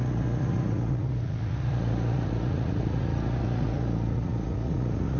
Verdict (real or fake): fake